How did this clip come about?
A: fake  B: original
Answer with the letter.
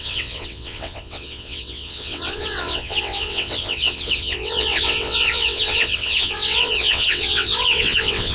A